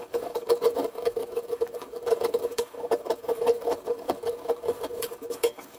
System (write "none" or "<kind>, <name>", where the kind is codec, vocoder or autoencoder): codec, DAC